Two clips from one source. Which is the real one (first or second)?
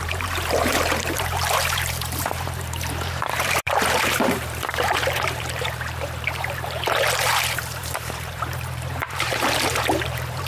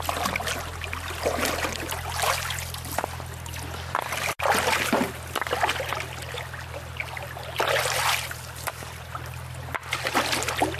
second